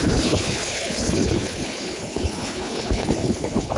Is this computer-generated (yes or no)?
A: yes